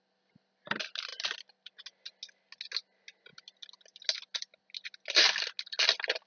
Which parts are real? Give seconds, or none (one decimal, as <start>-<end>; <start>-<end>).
0.0-6.3